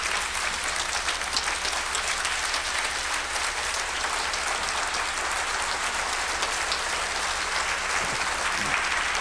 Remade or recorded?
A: recorded